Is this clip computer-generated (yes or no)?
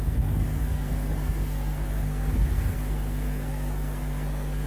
yes